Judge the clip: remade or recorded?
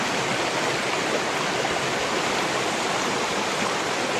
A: recorded